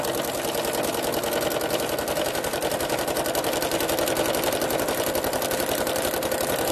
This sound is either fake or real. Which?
real